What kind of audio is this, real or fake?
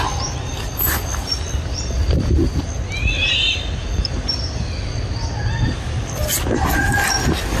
real